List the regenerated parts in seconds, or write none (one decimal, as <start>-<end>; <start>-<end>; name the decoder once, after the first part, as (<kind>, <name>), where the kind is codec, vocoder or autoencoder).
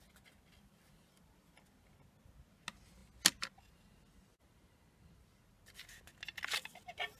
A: none